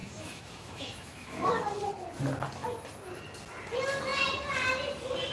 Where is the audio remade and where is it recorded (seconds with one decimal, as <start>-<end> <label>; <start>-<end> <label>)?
0.0-1.5 remade; 1.5-5.3 recorded